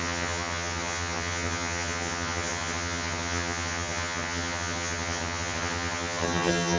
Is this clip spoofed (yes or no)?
yes